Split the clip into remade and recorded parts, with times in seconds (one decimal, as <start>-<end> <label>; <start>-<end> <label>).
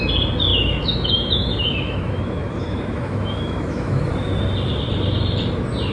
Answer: 0.0-0.5 recorded; 0.5-4.0 remade; 4.0-5.9 recorded